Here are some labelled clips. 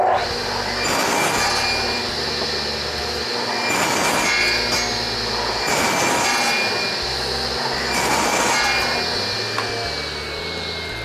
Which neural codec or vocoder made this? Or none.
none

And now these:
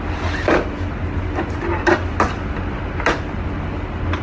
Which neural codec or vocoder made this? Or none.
none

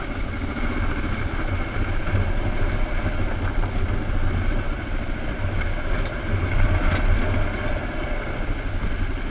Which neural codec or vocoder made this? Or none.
none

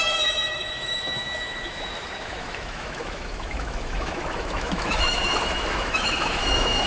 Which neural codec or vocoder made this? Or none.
autoencoder, DAC-VAE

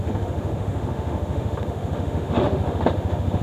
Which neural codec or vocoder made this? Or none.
autoencoder, DAC-VAE